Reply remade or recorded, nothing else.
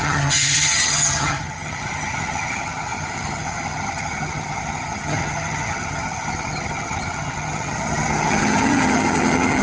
remade